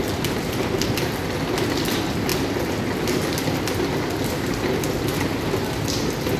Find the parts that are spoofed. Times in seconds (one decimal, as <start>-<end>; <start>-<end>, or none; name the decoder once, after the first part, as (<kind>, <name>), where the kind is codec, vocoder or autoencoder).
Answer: none